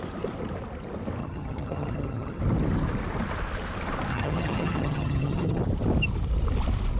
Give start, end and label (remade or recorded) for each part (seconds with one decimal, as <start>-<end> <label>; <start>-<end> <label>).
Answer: 0.0-1.2 recorded; 1.2-2.4 remade; 2.4-4.1 recorded; 4.1-5.6 remade; 5.6-7.0 recorded